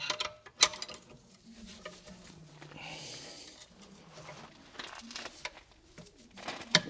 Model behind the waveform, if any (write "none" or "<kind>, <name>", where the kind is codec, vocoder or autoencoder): none